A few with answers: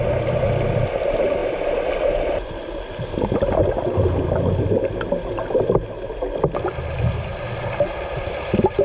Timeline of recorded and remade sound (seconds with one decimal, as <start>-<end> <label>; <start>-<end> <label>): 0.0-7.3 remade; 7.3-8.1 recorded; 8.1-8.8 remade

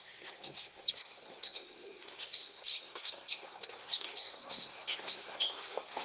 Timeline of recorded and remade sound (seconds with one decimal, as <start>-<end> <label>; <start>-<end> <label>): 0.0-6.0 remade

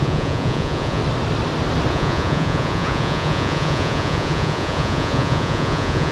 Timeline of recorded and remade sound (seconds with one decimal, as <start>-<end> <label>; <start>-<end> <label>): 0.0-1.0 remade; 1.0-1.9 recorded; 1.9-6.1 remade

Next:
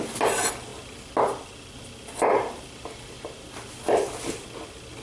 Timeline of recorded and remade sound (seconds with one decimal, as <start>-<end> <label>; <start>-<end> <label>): 0.0-5.0 recorded

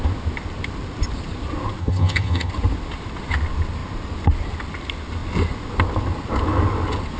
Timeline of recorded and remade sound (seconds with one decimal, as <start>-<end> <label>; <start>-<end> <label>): 0.0-1.8 recorded; 1.8-2.5 remade; 2.5-7.2 recorded